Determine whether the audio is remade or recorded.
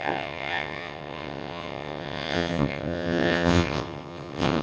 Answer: remade